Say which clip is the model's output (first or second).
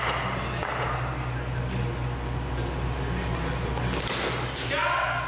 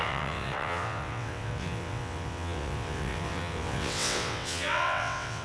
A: second